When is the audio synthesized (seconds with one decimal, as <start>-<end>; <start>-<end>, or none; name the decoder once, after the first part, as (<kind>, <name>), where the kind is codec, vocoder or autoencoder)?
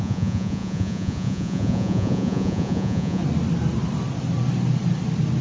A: 0.0-3.2 (vocoder, Vocos)